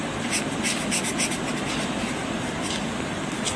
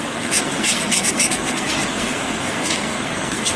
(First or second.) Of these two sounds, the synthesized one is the second